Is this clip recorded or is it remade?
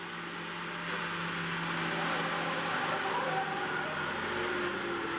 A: recorded